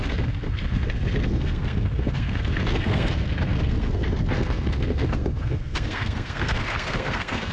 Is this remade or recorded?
remade